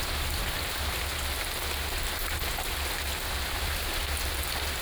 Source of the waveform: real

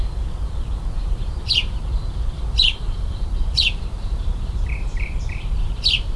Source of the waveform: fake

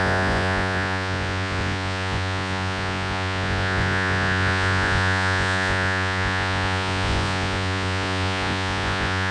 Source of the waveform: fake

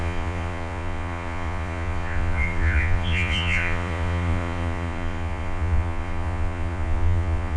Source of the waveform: fake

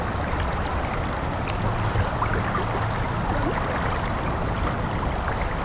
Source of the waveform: real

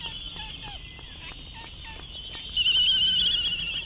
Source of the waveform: real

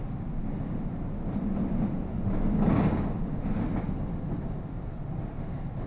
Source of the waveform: real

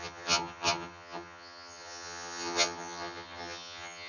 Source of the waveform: fake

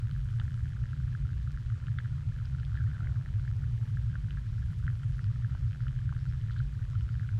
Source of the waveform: fake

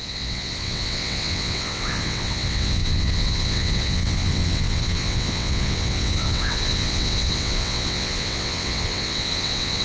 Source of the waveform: fake